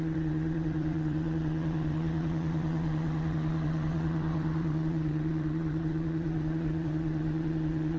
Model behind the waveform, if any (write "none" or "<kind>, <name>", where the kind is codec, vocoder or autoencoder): vocoder, WaveNeXt